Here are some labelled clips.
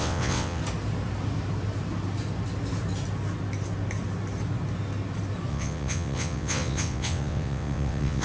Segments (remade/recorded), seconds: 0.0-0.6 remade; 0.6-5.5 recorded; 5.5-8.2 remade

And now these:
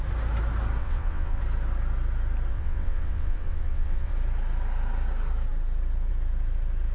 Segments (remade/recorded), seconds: 0.0-0.8 recorded; 0.8-1.4 remade; 1.4-2.5 recorded; 2.5-4.1 remade; 4.1-6.9 recorded

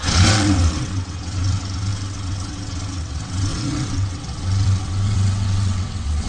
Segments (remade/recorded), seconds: 0.0-6.3 remade

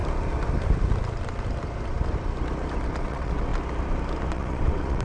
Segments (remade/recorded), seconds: 0.0-3.0 recorded; 3.0-3.5 remade; 3.5-4.3 recorded; 4.3-5.0 remade

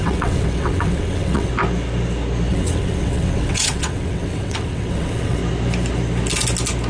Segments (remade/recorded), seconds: 0.0-1.5 remade; 1.5-2.5 recorded; 2.5-5.4 remade; 5.4-6.9 recorded

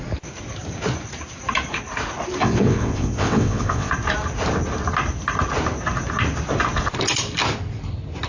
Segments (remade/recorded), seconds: 0.0-2.4 recorded; 2.4-3.9 remade; 3.9-8.3 recorded